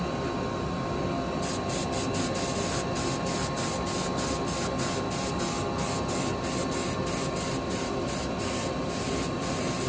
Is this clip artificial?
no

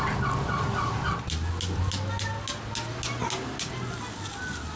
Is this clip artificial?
no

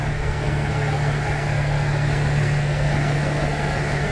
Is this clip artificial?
yes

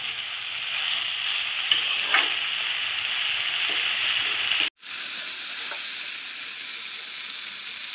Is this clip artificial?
no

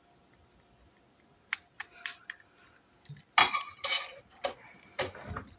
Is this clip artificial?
no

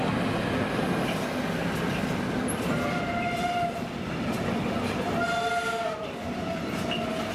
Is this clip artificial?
no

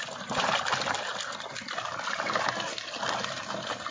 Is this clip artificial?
no